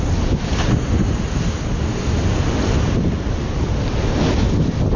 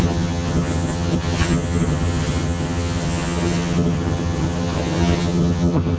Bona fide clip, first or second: first